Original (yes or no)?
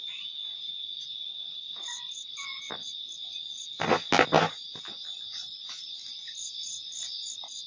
yes